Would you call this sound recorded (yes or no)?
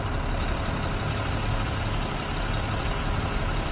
yes